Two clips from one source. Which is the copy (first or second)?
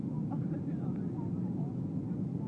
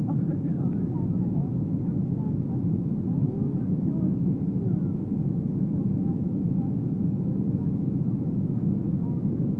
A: second